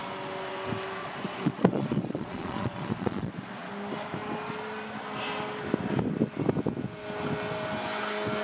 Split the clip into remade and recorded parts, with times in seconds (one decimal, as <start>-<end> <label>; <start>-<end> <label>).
0.0-1.0 recorded; 1.0-3.7 remade; 3.7-8.4 recorded